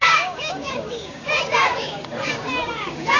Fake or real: fake